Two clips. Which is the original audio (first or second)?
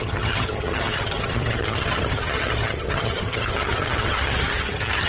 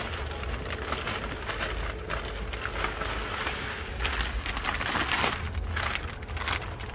second